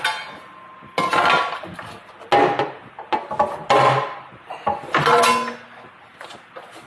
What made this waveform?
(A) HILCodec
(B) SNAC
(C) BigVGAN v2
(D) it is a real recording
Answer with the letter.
D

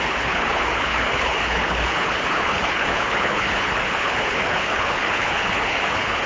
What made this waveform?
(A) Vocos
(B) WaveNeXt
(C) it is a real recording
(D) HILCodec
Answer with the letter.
D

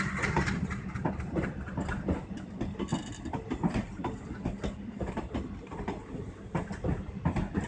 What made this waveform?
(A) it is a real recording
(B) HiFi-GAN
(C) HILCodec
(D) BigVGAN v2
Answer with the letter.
A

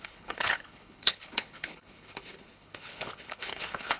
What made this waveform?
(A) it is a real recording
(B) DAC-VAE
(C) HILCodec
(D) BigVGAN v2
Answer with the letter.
C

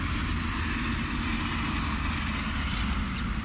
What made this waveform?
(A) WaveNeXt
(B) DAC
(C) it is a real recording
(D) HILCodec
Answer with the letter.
C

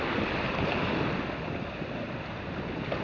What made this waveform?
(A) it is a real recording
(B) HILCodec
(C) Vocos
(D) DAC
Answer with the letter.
A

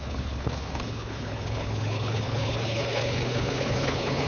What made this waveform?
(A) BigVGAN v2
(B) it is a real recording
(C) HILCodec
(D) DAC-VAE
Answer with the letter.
C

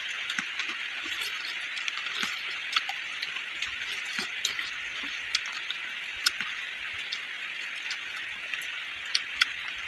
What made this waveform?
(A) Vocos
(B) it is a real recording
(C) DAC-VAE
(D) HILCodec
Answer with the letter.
B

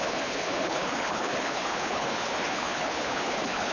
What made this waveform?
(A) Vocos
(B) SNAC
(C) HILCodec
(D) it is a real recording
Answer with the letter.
C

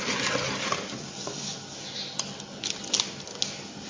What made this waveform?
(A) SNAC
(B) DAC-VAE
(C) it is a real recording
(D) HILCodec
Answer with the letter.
C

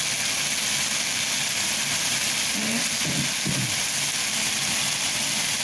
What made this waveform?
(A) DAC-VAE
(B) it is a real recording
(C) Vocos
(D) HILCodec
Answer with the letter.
B